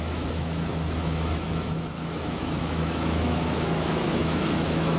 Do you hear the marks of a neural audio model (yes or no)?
yes